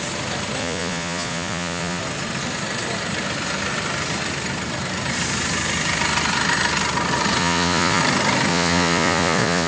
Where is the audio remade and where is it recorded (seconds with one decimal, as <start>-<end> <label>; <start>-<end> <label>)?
0.0-0.6 recorded; 0.6-2.0 remade; 2.0-7.4 recorded; 7.4-8.0 remade; 8.0-8.5 recorded; 8.5-9.7 remade